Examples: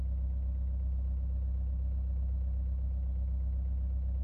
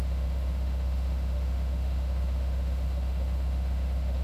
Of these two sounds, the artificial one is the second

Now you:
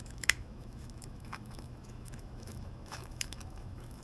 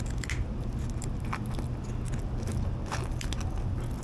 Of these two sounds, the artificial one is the first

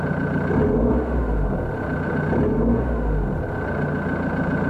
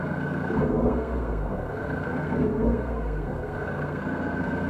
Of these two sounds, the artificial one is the second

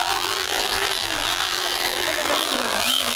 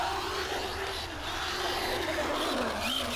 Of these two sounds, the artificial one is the first